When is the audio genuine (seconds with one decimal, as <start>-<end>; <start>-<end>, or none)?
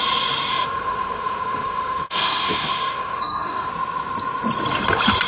0.0-0.5; 3.7-5.3